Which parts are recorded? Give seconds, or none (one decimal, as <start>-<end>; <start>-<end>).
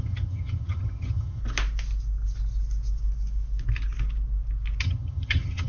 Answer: 1.4-4.8